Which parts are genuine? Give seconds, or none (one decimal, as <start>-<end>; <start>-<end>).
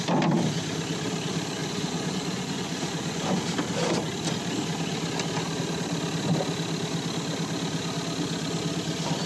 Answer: 0.0-1.6; 3.4-9.3